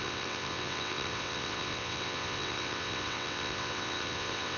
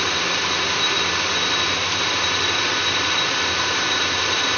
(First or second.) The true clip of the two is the second